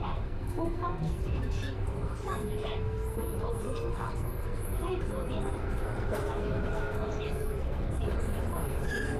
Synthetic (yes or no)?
yes